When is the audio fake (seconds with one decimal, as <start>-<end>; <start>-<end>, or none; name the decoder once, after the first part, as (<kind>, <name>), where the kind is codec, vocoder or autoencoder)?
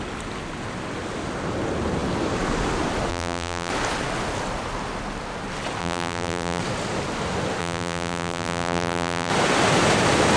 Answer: 3.1-3.7 (vocoder, BigVGAN v2); 5.8-6.6; 7.6-9.3